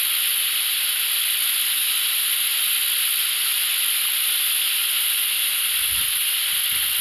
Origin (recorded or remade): recorded